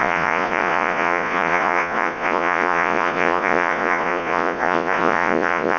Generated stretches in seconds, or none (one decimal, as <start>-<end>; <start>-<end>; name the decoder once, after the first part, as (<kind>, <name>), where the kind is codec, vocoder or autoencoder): 0.0-5.8 (vocoder, Vocos)